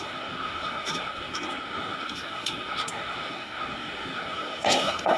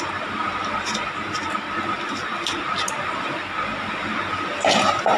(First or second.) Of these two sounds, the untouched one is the second